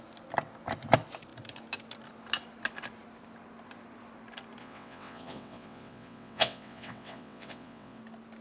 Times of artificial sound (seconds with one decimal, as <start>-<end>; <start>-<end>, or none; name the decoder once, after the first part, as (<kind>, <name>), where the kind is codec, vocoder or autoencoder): 4.6-8.0 (vocoder, WaveNeXt)